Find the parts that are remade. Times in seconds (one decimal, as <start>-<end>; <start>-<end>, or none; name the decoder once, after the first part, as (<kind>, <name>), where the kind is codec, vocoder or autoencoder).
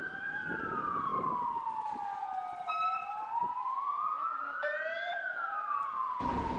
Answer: 0.0-1.1 (vocoder, Vocos); 3.4-6.6